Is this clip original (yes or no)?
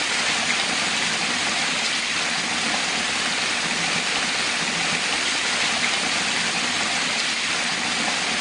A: yes